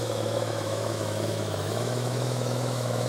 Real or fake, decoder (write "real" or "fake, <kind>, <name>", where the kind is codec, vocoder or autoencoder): fake, autoencoder, DAC-VAE